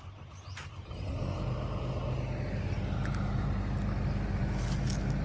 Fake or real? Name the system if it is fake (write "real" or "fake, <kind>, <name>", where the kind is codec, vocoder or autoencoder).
real